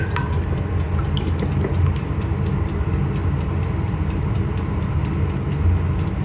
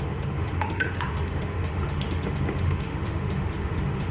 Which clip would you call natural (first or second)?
first